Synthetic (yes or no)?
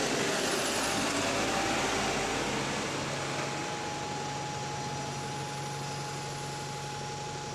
no